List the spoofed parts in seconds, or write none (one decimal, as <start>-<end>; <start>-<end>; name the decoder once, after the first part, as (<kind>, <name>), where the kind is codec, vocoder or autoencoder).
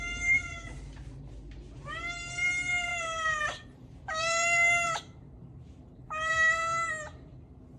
2.9-6.9 (vocoder, BigVGAN v2)